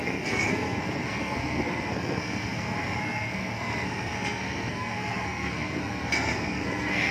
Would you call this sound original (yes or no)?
no